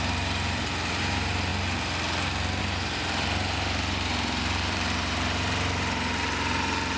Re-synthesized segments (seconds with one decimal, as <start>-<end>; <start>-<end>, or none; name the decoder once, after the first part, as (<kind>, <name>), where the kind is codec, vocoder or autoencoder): 0.0-1.5 (vocoder, BigVGAN v2); 2.6-7.0